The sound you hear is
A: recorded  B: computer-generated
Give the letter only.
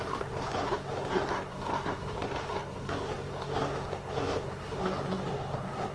B